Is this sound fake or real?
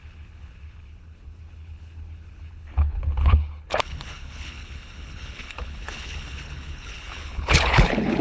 fake